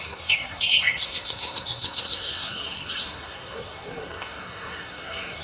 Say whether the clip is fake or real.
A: fake